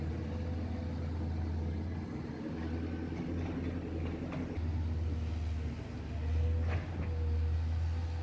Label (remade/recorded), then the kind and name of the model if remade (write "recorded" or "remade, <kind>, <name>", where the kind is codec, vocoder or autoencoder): recorded